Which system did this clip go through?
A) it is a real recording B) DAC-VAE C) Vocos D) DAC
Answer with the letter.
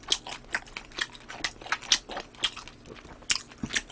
A